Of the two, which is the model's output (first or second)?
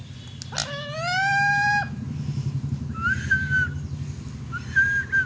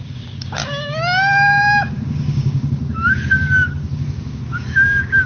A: second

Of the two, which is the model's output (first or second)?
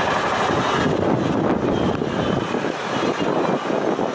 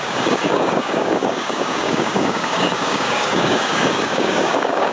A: second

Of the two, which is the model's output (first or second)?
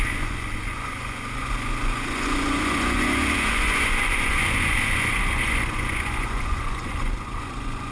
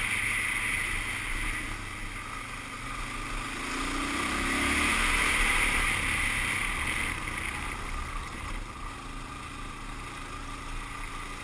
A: first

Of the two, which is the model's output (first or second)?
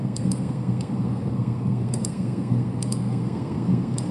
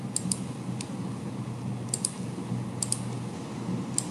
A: first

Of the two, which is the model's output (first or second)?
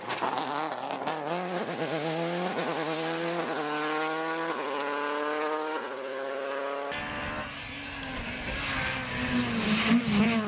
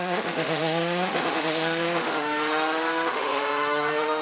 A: second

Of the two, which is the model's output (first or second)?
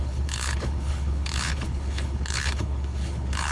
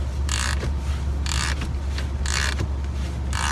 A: first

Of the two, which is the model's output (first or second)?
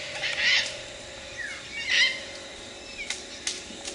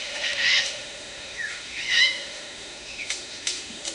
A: second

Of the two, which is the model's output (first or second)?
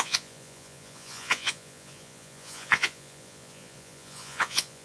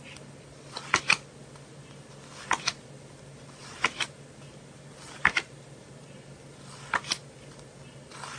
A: first